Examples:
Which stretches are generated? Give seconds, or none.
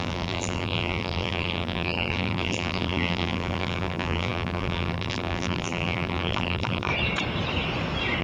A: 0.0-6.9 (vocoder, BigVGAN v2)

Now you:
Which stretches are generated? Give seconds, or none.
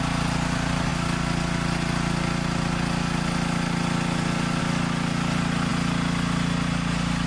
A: none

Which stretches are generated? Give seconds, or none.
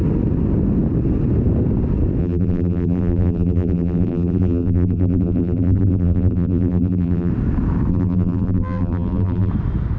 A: 2.2-7.3 (vocoder, BigVGAN v2); 7.9-9.5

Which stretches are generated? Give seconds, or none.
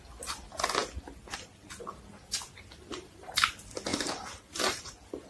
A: 2.9-3.5 (vocoder, BigVGAN v2); 3.9-4.8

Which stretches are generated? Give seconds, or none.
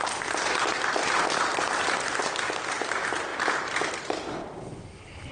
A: 1.5-2.2 (vocoder, BigVGAN v2)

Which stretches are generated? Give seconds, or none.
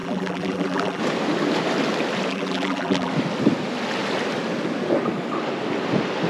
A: 0.0-1.0 (vocoder, BigVGAN v2); 2.3-3.1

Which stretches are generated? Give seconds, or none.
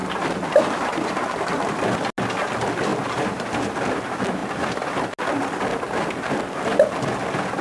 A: 0.0-1.1 (vocoder, BigVGAN v2); 2.9-3.7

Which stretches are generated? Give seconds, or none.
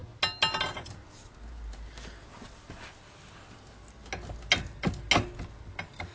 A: none